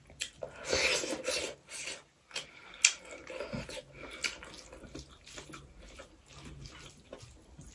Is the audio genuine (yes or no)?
yes